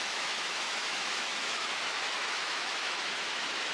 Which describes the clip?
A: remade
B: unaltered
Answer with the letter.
A